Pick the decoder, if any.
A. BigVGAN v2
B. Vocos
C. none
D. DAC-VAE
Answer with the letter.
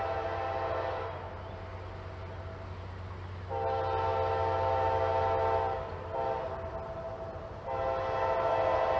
C